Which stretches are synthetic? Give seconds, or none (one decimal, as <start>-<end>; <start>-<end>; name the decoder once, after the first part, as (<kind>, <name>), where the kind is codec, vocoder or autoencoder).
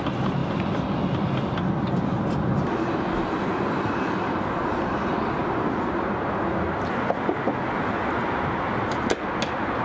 none